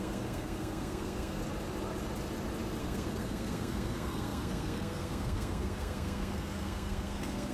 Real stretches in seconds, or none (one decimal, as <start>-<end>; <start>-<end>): 1.4-2.8

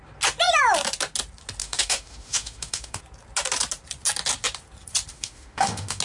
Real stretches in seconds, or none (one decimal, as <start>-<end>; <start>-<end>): 0.0-1.6; 3.0-5.1